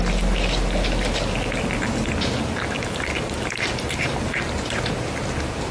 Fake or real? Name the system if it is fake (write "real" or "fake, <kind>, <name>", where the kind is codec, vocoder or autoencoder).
real